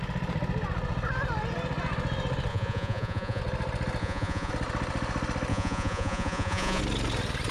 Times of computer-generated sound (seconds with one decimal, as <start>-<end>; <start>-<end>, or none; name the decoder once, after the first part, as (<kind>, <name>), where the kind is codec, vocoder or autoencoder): 2.5-3.4 (vocoder, Vocos); 4.0-4.5; 5.5-6.8